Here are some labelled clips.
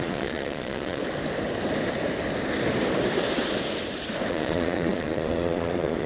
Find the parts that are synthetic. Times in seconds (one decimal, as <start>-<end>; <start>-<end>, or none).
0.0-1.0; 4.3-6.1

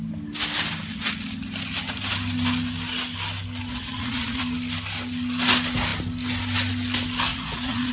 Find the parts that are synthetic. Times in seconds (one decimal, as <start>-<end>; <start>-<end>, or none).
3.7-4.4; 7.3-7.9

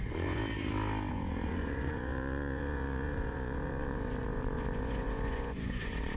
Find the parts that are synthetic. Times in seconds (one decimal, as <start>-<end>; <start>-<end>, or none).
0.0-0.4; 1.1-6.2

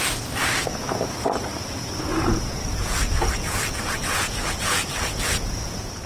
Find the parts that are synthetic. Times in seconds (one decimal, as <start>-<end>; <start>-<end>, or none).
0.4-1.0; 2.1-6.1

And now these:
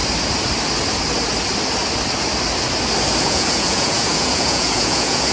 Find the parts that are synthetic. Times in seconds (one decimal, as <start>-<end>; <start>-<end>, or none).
3.2-5.3

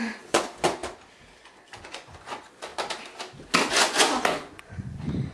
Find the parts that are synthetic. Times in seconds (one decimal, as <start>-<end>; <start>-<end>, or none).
0.0-0.8; 1.4-2.7; 3.7-5.3

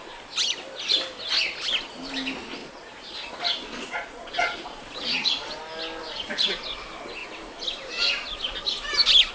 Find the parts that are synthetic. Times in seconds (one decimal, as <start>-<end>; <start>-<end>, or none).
2.6-3.3; 3.7-5.6

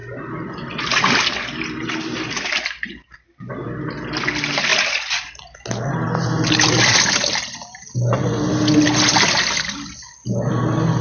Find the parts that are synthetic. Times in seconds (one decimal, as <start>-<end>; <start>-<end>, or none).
none